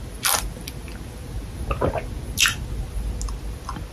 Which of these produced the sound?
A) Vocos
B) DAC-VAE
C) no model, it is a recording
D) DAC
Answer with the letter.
C